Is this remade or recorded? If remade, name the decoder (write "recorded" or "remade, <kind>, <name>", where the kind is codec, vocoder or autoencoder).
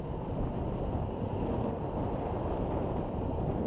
recorded